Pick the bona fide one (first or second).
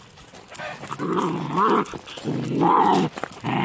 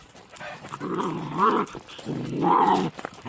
first